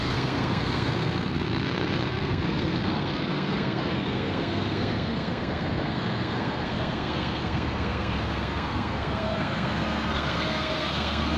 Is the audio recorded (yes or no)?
no